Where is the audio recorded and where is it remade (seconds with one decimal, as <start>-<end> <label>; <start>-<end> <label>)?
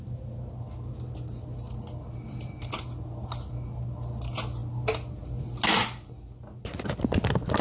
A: 0.0-7.6 recorded